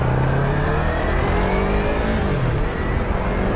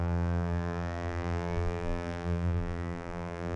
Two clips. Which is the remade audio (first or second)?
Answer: second